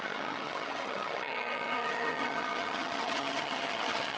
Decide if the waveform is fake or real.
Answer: fake